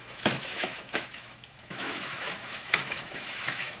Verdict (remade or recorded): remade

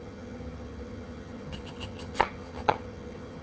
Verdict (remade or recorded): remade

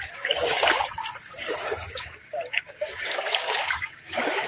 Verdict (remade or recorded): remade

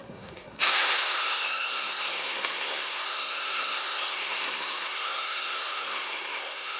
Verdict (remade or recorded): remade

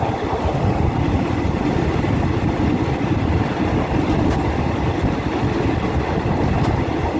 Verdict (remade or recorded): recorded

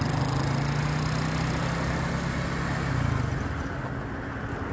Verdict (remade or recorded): recorded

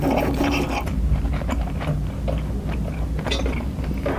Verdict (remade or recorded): recorded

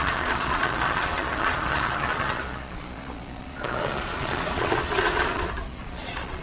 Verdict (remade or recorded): remade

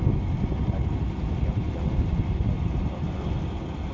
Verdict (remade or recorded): recorded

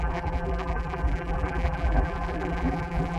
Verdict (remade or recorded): remade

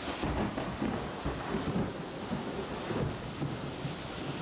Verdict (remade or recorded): remade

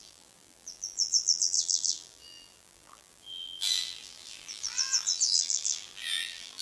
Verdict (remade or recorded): remade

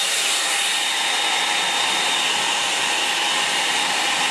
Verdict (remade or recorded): recorded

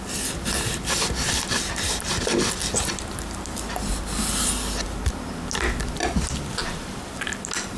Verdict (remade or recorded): recorded